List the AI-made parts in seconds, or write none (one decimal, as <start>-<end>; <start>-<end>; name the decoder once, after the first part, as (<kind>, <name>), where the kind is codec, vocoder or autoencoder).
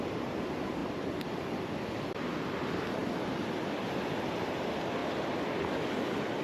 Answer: 0.8-1.8 (vocoder, BigVGAN v2); 5.0-6.4